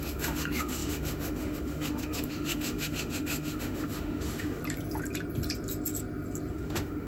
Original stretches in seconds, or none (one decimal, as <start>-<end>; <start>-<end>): 4.6-6.5